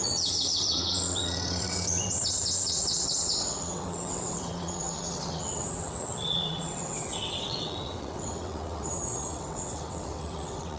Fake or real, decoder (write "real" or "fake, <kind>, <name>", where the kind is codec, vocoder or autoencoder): fake, vocoder, WaveNeXt